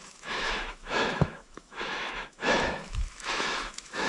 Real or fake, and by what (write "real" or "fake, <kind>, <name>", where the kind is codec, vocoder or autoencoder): fake, autoencoder, DAC-VAE